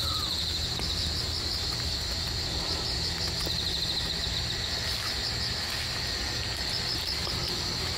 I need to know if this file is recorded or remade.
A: recorded